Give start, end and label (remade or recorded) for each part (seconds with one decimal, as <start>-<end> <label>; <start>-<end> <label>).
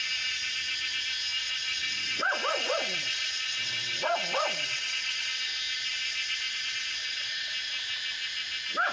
0.0-1.4 recorded; 1.4-5.6 remade; 5.6-7.0 recorded; 7.0-7.5 remade; 7.5-8.9 recorded